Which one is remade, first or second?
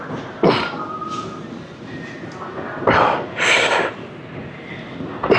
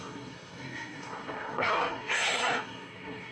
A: second